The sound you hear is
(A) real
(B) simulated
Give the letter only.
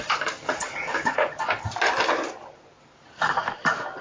A